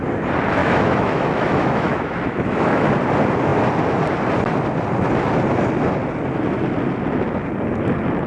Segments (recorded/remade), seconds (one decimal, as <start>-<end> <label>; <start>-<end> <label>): 0.0-0.6 recorded; 0.6-2.9 remade; 2.9-8.3 recorded